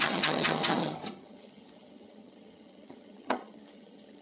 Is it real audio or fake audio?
fake